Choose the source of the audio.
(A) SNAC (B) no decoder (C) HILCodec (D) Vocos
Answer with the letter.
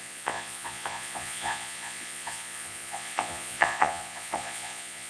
D